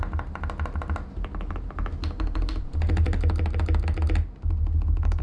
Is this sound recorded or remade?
recorded